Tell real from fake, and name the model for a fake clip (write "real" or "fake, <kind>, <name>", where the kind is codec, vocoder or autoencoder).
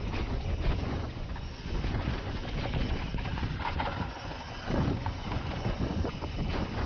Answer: fake, vocoder, Vocos